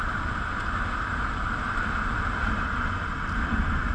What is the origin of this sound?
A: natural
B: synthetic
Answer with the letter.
A